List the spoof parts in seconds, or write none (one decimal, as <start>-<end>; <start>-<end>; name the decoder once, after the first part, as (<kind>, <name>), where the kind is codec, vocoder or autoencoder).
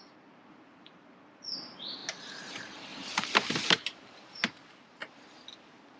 0.0-2.0 (vocoder, BigVGAN v2); 2.5-2.9; 3.7-5.0